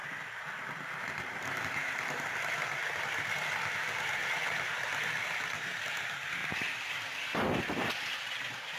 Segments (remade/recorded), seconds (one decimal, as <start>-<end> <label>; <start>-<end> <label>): 0.0-4.2 remade; 4.2-6.0 recorded; 6.0-8.8 remade